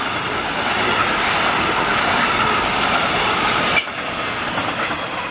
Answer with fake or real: real